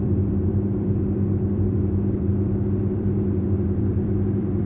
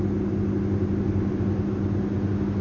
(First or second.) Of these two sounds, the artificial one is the first